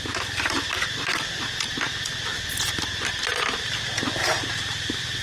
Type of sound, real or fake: real